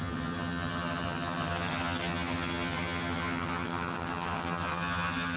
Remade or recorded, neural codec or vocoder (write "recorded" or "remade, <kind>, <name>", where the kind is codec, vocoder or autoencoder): remade, vocoder, HiFi-GAN